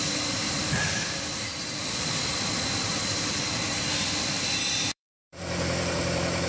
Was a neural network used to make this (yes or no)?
yes